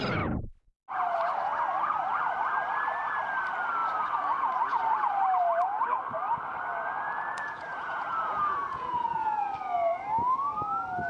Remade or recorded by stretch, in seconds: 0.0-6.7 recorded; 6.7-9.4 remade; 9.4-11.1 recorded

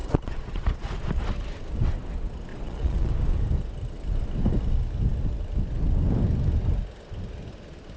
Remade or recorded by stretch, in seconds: 0.0-1.1 remade; 1.1-2.5 recorded; 2.5-3.1 remade; 3.1-8.0 recorded